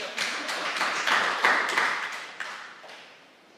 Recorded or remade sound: remade